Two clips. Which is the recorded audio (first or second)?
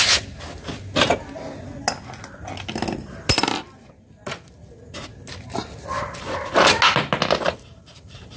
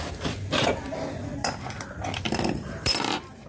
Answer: first